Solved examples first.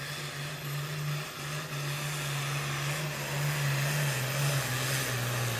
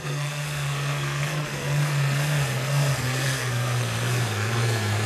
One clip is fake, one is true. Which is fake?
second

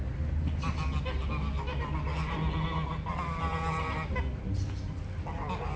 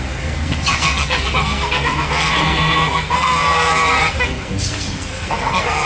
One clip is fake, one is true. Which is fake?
second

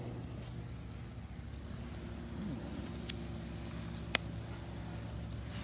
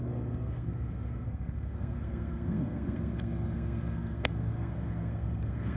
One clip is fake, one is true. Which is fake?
second